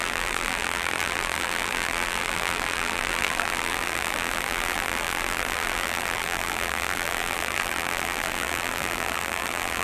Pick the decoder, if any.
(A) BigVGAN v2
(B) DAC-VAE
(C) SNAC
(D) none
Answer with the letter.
A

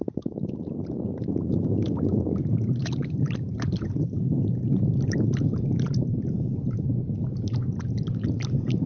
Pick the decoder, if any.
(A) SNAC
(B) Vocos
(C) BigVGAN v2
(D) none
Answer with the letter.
C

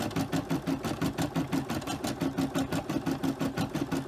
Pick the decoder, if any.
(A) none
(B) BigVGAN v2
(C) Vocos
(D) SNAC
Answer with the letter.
A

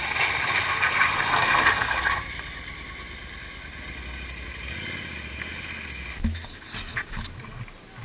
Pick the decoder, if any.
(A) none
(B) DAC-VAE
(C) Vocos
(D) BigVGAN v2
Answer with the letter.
A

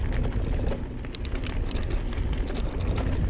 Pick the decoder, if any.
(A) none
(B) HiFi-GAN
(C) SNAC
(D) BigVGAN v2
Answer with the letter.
A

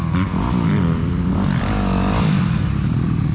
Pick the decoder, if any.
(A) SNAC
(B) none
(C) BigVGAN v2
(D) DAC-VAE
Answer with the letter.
C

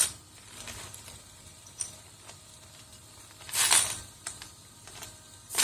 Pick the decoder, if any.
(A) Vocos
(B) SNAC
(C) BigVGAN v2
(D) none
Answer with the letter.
C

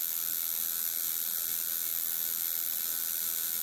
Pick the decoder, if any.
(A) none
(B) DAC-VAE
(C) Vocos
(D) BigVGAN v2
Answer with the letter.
A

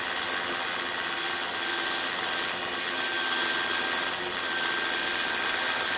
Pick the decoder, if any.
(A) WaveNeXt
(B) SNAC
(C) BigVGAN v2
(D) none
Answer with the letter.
D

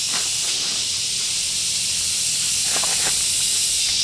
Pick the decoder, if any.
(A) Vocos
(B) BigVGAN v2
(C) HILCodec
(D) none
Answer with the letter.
D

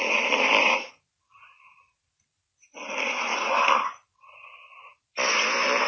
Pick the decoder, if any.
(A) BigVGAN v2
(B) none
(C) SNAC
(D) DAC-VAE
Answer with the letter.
B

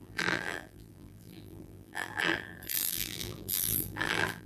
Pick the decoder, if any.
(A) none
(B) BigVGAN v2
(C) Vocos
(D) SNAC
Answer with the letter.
B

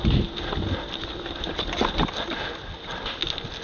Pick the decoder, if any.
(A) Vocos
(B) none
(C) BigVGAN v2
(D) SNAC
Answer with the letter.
B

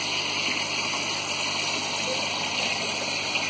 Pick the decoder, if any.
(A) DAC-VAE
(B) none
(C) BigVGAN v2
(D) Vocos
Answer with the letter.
C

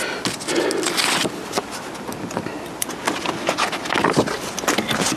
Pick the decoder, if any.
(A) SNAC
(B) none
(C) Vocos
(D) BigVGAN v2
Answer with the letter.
B